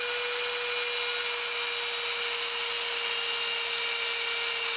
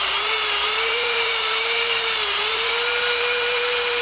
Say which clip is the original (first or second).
first